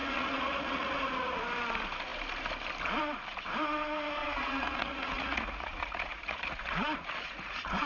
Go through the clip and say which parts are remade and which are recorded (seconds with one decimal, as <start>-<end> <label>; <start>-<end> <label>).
0.0-1.4 remade; 1.4-4.2 recorded; 4.2-7.9 remade